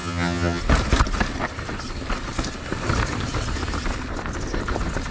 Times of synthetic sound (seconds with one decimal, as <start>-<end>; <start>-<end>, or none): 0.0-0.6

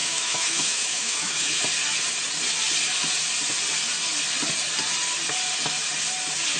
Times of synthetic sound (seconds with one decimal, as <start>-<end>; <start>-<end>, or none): 0.0-1.6

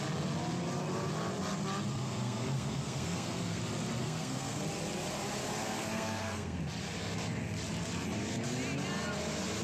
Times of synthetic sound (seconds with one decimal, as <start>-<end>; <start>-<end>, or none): 1.9-3.6; 4.0-4.6; 5.6-6.6